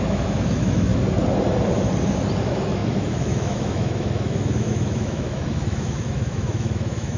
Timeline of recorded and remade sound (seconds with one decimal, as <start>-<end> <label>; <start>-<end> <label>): 0.0-0.9 remade; 0.9-2.4 recorded; 2.4-7.2 remade